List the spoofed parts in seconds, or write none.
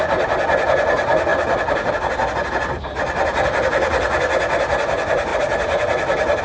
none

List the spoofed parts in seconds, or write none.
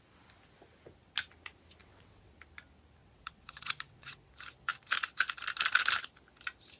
1.8-2.3 (vocoder, WaveNeXt); 3.0-4.3